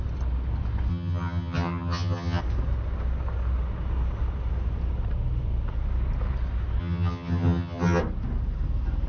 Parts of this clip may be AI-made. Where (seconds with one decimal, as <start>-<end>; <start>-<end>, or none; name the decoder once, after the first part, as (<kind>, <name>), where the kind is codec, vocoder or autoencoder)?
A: 0.9-2.4 (vocoder, HiFi-GAN); 6.8-8.0